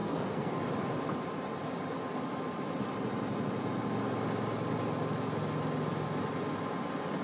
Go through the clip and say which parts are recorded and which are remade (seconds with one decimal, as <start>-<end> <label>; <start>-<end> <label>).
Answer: 0.0-0.6 remade; 0.6-7.2 recorded